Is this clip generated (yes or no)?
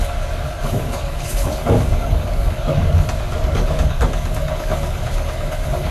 yes